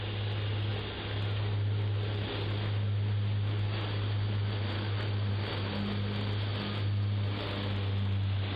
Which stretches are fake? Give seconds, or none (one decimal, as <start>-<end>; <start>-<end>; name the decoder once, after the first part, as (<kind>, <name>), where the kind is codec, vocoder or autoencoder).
none